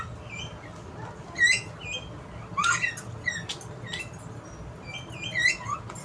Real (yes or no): yes